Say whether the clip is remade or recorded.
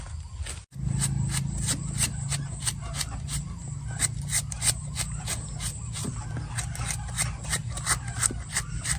recorded